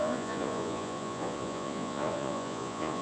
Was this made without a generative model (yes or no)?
no